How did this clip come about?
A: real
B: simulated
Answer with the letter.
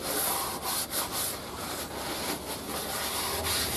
A